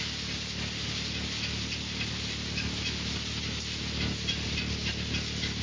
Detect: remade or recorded recorded